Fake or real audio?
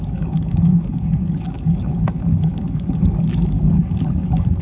fake